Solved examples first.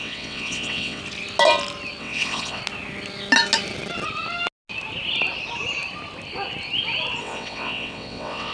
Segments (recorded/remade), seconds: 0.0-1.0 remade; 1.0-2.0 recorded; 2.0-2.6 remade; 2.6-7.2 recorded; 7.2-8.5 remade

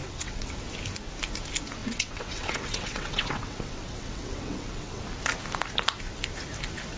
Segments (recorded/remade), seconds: 0.0-0.5 remade; 0.5-1.8 recorded; 1.8-5.0 remade; 5.0-7.0 recorded

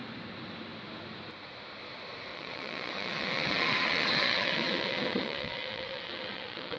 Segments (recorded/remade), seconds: 0.0-2.3 recorded; 2.3-6.8 remade

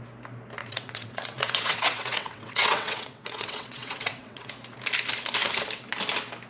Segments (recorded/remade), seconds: 0.0-0.6 recorded; 0.6-4.5 remade; 4.5-6.5 recorded

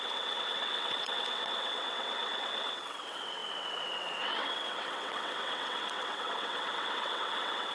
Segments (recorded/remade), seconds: 0.0-7.7 remade